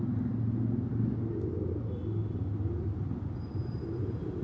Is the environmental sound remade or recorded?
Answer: recorded